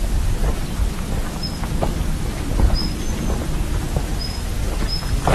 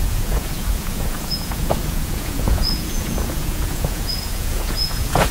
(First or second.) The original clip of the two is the first